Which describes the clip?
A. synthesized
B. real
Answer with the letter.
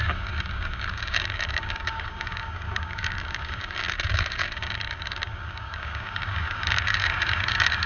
A